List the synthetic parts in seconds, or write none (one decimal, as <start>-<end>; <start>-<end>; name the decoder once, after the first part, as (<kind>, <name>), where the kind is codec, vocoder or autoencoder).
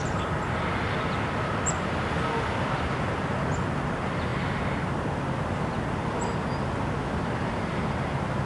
none